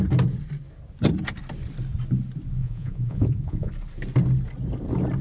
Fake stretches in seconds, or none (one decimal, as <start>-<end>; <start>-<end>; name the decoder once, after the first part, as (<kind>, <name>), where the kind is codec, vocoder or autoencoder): 2.6-3.7 (vocoder, Vocos)